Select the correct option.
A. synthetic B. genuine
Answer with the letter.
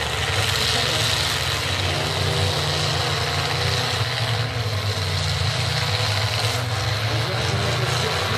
B